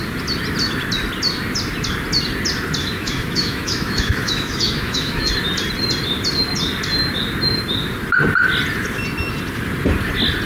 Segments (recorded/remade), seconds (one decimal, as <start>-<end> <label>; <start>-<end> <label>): 0.0-2.8 recorded; 2.8-5.3 remade; 5.3-10.5 recorded